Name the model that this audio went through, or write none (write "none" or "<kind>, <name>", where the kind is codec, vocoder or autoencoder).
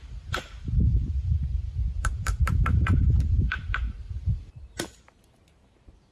vocoder, BigVGAN v2